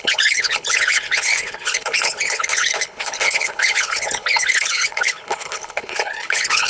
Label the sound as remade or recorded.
remade